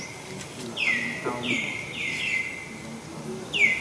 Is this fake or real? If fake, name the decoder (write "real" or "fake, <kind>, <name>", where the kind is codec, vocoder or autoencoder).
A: real